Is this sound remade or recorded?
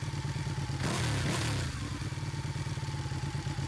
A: recorded